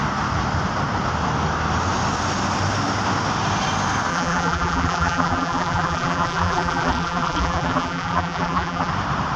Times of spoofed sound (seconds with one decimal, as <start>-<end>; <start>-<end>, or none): 4.1-8.9